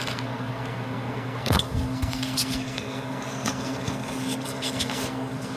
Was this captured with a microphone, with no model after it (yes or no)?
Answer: no